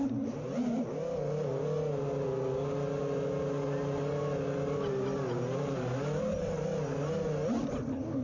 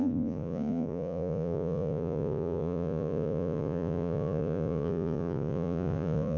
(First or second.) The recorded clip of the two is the first